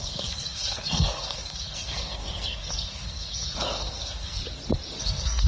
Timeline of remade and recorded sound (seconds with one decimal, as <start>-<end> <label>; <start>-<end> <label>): 0.0-4.4 remade; 4.4-5.0 recorded; 5.0-5.5 remade